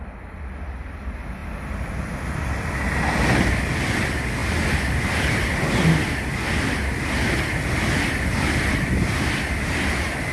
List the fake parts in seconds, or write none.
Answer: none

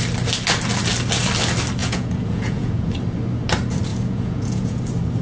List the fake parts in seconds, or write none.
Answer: 1.8-2.9 (vocoder, Vocos); 3.9-4.8

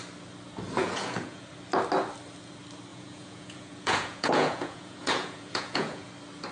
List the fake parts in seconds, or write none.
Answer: 0.8-1.5 (vocoder, Vocos); 2.9-6.1

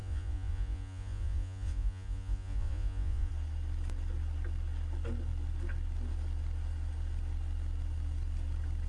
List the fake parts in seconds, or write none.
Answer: 0.0-3.3 (vocoder, Vocos)